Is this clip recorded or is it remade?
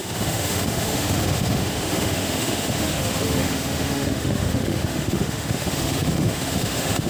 remade